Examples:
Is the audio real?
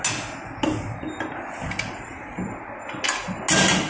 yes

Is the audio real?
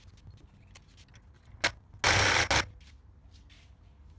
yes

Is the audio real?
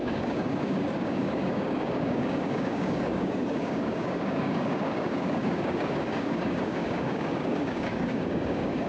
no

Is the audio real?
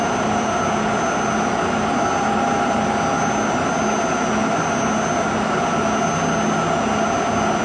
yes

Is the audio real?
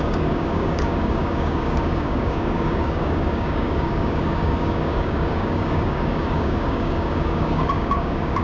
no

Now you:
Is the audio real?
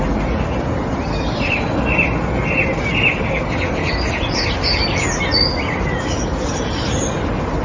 yes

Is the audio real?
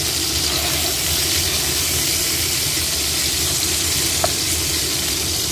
yes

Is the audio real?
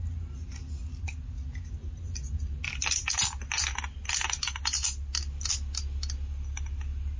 yes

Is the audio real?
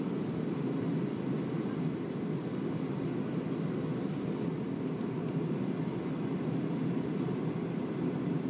yes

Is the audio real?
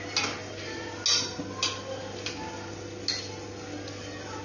yes